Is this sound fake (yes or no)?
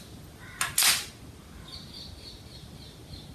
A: no